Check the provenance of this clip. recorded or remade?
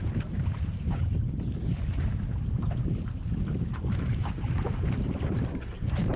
remade